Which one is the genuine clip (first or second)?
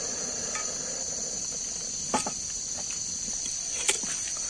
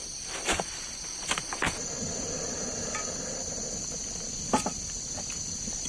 first